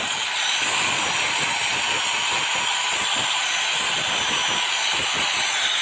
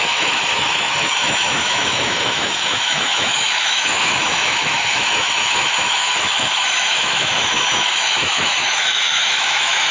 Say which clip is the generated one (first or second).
second